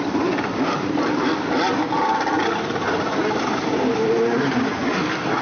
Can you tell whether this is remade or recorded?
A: recorded